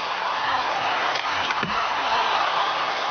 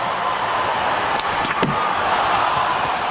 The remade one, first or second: first